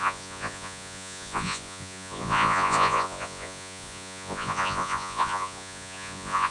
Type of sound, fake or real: fake